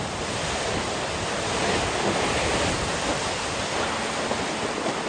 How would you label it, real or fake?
real